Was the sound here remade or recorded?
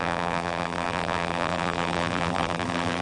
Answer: remade